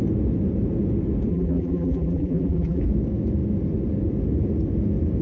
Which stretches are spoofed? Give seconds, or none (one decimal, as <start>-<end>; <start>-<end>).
1.3-2.8